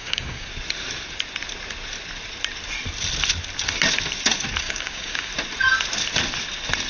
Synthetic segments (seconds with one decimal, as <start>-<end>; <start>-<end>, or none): 0.0-0.5; 4.6-5.3